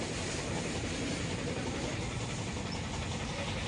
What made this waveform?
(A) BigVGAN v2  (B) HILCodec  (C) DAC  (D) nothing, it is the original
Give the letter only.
D